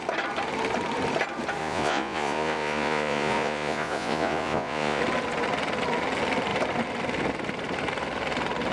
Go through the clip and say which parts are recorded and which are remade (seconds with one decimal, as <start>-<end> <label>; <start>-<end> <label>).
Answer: 0.0-1.6 recorded; 1.6-5.0 remade; 5.0-8.7 recorded